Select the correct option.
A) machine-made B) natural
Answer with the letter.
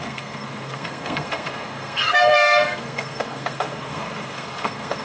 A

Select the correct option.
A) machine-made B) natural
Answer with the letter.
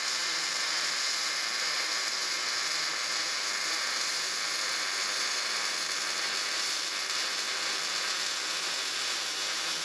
B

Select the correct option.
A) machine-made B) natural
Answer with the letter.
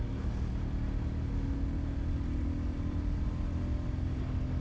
B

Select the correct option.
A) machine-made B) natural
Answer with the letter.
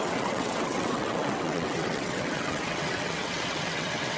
A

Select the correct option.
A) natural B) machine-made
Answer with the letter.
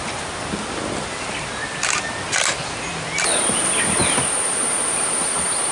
A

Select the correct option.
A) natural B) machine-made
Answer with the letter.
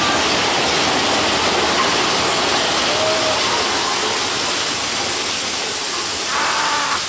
A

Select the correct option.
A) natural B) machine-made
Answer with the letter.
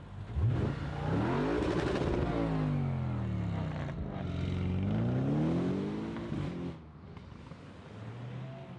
A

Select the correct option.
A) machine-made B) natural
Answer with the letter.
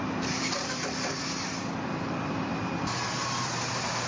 A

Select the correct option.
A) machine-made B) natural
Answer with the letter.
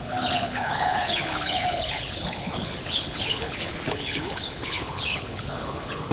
A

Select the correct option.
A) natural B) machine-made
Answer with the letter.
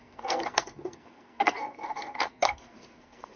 B